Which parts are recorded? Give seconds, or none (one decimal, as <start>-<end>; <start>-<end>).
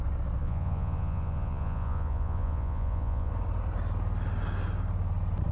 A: 0.0-0.4; 3.3-5.5